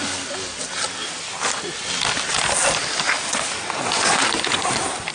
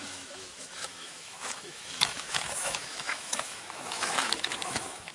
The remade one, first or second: second